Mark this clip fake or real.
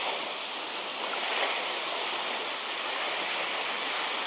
real